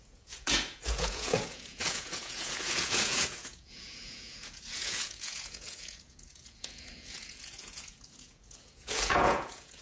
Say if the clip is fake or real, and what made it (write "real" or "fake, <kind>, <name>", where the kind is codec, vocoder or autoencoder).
fake, vocoder, Vocos